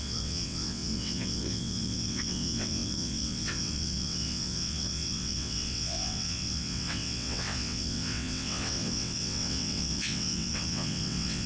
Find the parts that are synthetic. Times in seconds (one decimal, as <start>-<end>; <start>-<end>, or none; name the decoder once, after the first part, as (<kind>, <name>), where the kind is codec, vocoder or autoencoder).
0.0-11.5 (vocoder, WaveNeXt)